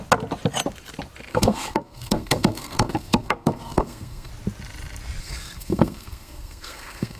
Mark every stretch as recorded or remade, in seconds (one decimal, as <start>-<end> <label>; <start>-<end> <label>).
0.0-1.3 recorded; 1.3-4.3 remade; 4.3-5.2 recorded; 5.2-7.2 remade